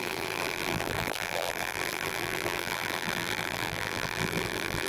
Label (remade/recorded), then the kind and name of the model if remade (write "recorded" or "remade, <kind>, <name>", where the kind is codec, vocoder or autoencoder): remade, vocoder, BigVGAN v2